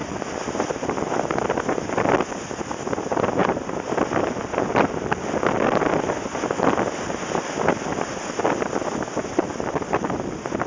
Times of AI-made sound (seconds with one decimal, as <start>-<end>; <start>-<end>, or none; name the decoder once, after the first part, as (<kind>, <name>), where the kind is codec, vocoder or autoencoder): 0.0-0.9 (vocoder, BigVGAN v2); 3.4-3.9